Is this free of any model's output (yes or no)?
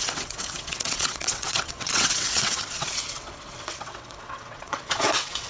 no